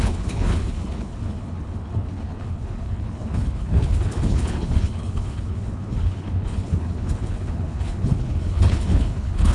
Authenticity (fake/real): fake